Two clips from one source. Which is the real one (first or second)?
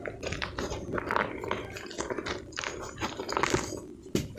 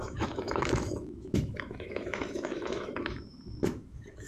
first